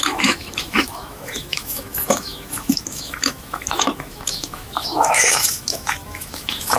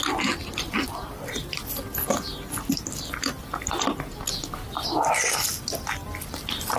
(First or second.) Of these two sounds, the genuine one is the second